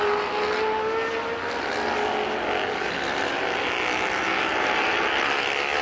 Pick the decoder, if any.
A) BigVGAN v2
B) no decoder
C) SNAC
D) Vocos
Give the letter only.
B